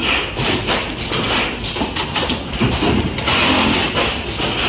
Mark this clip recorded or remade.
recorded